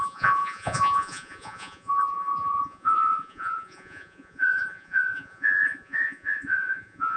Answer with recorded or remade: remade